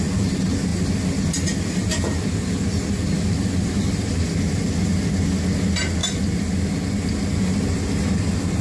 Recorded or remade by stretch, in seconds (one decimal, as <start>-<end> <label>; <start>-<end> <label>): 0.0-8.6 recorded